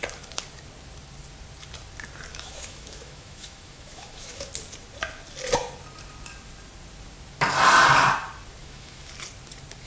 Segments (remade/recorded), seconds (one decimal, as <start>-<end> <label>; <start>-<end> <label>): 0.0-2.3 recorded; 2.3-4.5 remade; 4.5-8.6 recorded; 8.6-9.1 remade; 9.1-9.9 recorded